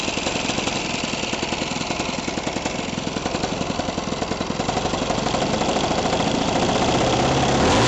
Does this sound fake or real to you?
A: real